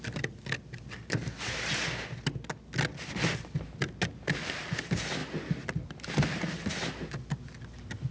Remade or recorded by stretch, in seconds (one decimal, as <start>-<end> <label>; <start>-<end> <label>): 0.0-8.1 recorded